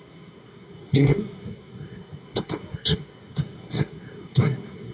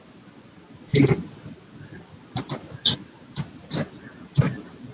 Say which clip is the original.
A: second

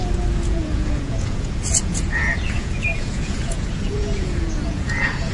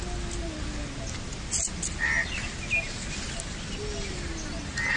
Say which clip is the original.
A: second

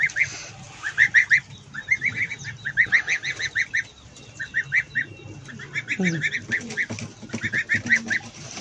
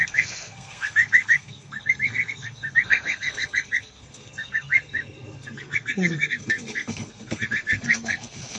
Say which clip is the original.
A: first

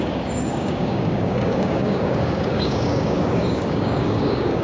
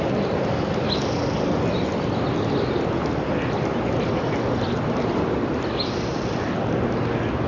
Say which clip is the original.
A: second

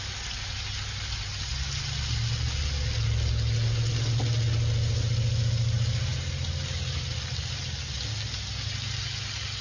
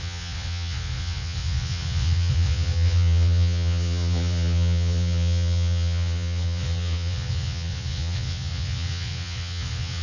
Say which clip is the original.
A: first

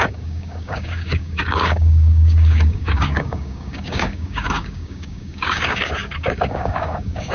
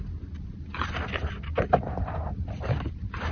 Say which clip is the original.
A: second